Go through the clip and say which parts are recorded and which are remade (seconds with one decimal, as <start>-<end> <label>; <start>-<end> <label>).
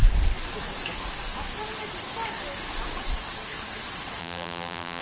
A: 0.0-4.2 recorded; 4.2-5.0 remade